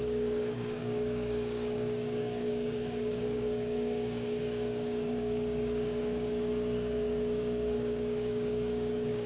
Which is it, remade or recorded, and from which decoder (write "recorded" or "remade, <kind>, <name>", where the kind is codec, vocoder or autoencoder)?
remade, codec, DAC